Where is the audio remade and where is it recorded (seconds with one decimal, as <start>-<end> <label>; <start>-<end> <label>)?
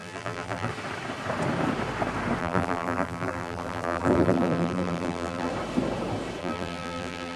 0.0-0.7 remade; 0.7-2.4 recorded; 2.4-5.5 remade; 5.5-6.4 recorded; 6.4-7.4 remade